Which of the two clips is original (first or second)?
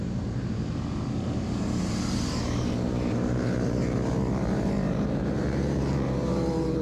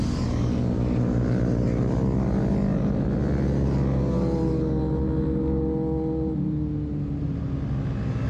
second